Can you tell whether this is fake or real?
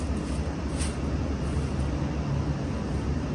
real